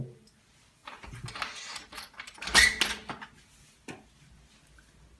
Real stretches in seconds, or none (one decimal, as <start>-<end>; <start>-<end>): 0.0-5.2